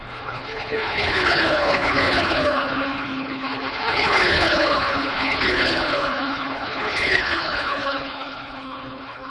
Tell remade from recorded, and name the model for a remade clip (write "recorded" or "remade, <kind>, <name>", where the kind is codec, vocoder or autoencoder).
remade, codec, HILCodec